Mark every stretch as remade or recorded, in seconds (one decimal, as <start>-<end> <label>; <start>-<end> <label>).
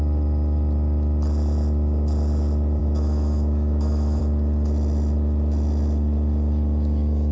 0.0-2.8 recorded; 2.8-4.2 remade; 4.2-7.3 recorded